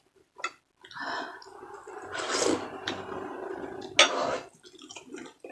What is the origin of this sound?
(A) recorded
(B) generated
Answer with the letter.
A